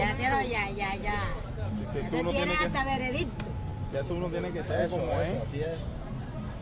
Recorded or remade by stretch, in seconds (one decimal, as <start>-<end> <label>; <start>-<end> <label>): 0.0-6.6 recorded